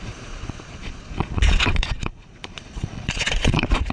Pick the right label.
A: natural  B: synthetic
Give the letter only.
B